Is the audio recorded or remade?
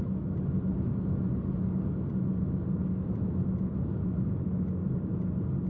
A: recorded